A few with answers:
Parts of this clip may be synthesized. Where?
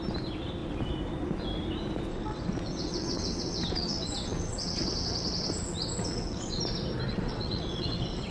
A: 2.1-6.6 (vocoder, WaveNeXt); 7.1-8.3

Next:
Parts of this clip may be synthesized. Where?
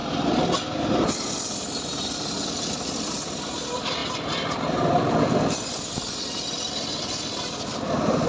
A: 1.3-4.0 (vocoder, BigVGAN v2); 5.2-8.3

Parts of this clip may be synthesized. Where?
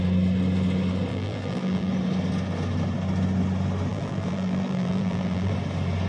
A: 1.1-1.9 (vocoder, BigVGAN v2); 3.9-5.5